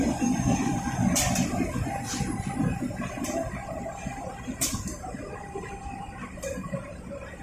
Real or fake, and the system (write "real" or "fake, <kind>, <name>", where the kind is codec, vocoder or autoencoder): fake, vocoder, BigVGAN v2